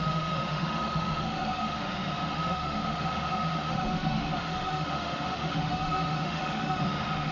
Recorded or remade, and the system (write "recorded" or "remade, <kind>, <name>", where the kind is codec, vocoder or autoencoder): remade, autoencoder, DAC-VAE